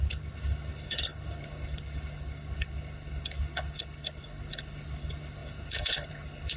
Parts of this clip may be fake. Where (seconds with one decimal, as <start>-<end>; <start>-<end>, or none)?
0.0-6.6